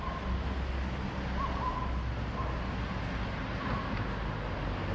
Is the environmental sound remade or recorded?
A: recorded